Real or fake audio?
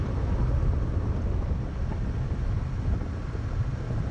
real